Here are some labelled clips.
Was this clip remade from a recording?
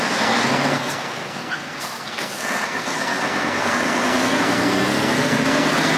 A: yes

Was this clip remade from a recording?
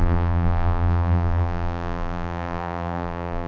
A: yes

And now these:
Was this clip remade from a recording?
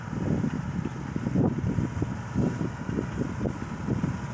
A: no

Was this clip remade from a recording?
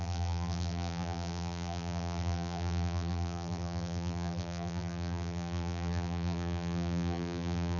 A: yes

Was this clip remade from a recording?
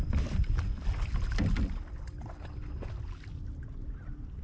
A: no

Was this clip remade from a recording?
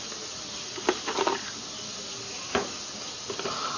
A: no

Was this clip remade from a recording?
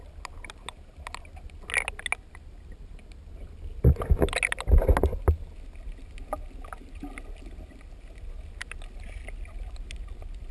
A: no